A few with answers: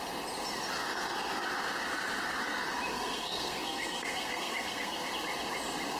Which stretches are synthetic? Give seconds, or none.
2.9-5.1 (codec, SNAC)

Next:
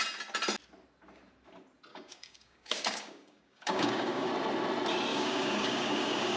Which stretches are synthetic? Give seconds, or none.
1.9-4.3 (codec, DAC); 5.1-6.4